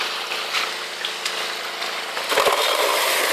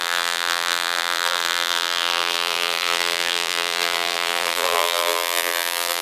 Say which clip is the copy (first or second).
second